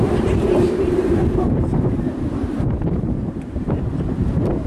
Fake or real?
fake